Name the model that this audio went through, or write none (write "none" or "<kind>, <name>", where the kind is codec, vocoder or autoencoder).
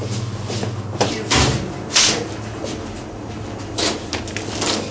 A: none